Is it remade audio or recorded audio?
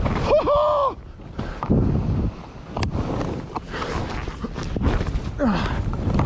recorded